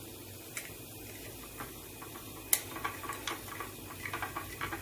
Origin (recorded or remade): recorded